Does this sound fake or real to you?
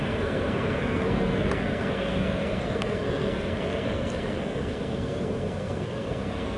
fake